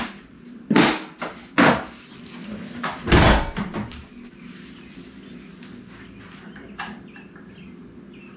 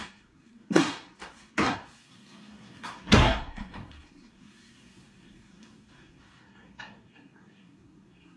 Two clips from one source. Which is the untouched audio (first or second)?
first